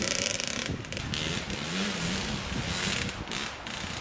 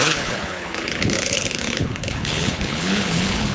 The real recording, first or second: first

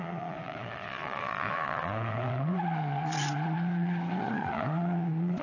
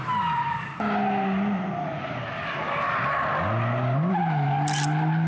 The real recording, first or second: second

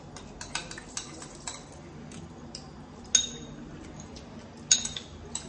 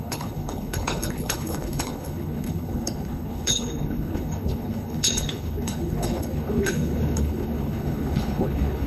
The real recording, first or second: first